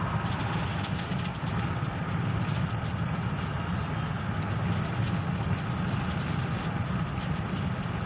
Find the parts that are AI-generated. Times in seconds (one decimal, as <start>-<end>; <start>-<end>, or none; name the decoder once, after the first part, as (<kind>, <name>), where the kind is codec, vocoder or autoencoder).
none